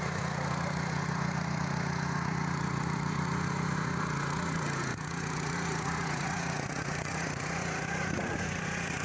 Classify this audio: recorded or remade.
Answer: remade